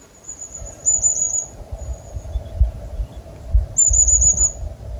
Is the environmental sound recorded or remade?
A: recorded